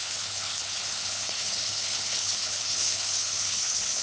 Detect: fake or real fake